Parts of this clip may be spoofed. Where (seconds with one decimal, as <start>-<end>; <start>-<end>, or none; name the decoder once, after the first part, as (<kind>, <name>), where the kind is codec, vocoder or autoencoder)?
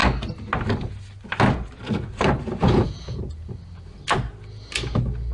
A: 2.8-3.5 (vocoder, Vocos)